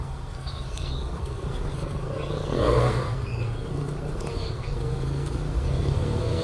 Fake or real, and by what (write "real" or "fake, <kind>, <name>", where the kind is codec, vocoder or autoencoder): fake, codec, SNAC